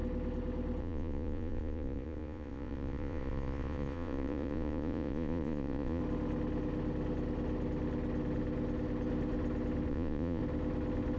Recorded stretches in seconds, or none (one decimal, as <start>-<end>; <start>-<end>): 0.0-0.8; 6.0-9.9; 10.4-11.2